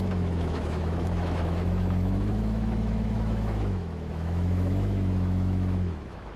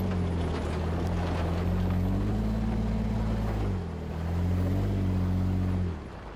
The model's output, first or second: first